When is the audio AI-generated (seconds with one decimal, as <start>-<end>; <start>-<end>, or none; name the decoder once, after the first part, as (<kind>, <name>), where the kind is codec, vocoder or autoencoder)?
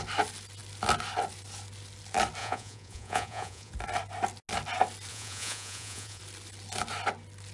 2.4-3.7 (vocoder, Vocos); 5.1-6.2